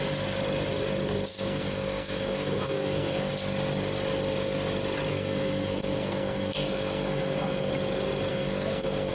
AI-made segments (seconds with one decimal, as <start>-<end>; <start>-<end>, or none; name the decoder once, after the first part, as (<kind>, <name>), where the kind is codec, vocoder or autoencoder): 1.3-3.3 (codec, SNAC); 5.1-7.7; 8.3-9.1